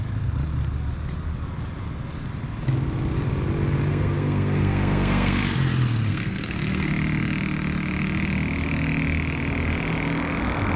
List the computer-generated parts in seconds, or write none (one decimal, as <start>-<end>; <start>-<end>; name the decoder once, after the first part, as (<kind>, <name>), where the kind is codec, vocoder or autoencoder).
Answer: 3.9-5.4 (codec, SNAC); 6.1-6.9